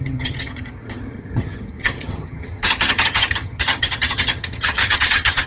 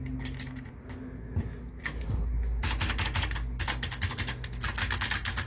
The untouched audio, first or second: second